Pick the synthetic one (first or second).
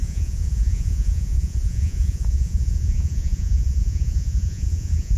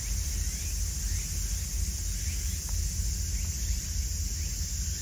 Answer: first